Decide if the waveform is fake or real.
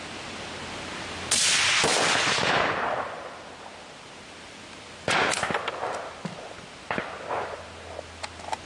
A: real